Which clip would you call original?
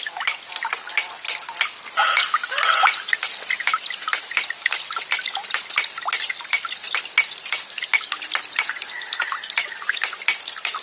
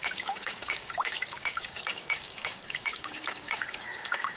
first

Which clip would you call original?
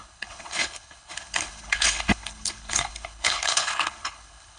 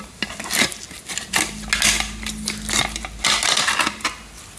second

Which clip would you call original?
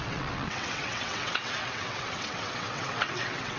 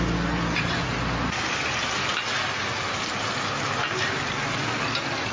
second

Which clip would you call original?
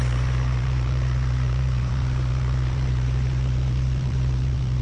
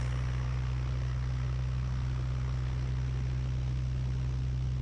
second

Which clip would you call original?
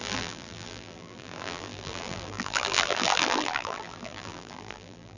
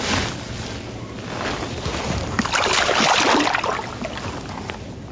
second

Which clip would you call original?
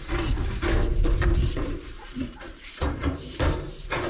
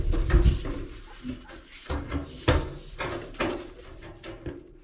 second